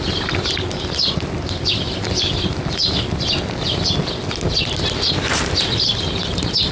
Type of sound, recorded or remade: recorded